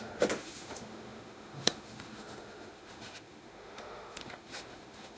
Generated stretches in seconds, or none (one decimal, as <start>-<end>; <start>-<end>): 0.0-5.2